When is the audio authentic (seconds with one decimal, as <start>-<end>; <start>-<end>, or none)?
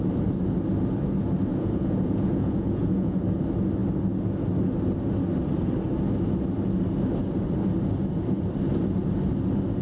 0.0-1.5; 3.2-9.8